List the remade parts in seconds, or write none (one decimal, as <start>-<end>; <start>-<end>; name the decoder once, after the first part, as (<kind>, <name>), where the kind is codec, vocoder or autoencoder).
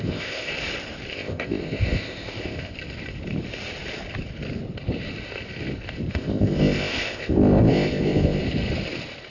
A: 0.0-0.5 (codec, ZipCodec); 1.1-2.7; 6.1-8.4